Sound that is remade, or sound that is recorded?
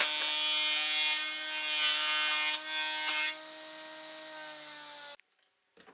recorded